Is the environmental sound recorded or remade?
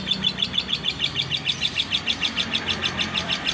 recorded